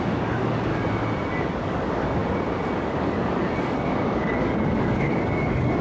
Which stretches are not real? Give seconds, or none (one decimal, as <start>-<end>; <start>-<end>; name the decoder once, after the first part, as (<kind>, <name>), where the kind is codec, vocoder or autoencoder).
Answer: 0.0-0.7 (codec, DAC); 1.4-2.2; 2.8-5.8